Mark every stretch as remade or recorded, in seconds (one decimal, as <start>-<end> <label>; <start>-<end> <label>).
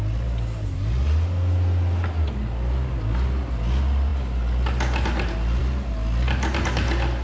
0.0-7.2 recorded